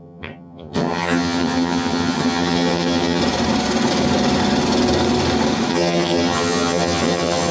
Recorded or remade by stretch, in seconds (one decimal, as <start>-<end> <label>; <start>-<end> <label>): 0.0-3.2 remade; 3.2-5.7 recorded; 5.7-7.5 remade